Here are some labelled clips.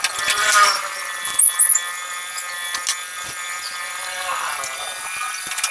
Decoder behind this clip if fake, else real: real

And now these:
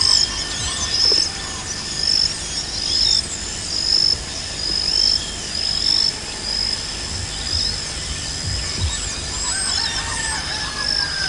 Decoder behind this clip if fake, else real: real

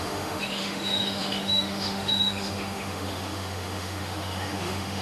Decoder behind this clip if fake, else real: fake, autoencoder, DAC-VAE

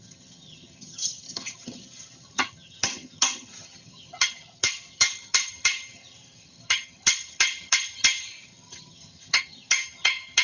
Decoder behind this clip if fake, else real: fake, vocoder, HiFi-GAN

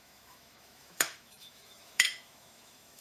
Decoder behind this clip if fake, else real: fake, autoencoder, DAC-VAE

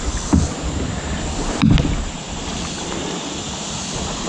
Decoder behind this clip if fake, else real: real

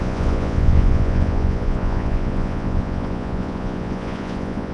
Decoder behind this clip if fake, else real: fake, vocoder, Vocos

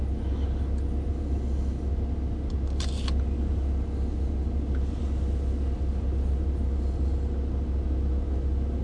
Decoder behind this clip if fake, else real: real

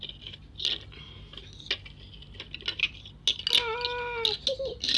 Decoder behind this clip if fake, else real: real